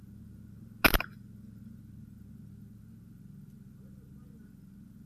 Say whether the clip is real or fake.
real